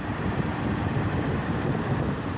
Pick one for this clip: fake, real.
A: fake